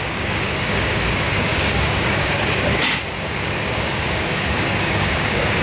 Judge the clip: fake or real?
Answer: fake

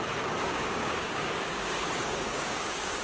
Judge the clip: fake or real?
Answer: fake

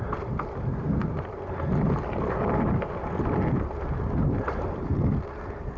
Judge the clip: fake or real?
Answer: real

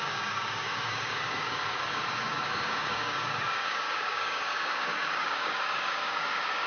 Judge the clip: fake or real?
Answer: fake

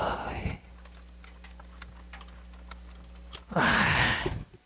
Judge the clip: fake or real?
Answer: real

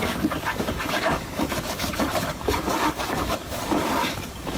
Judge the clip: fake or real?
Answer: fake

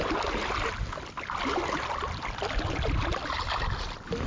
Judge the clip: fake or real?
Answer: real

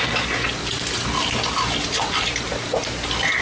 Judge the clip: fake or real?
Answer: real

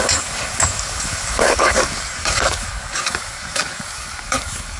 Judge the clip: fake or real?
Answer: fake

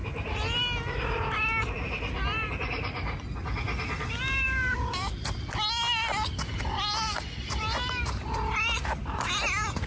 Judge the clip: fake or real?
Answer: real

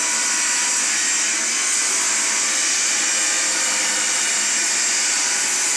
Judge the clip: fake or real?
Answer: real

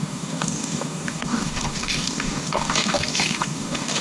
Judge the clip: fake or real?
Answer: fake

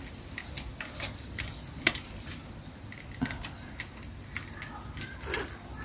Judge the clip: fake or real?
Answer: real